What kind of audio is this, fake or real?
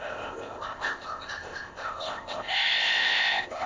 fake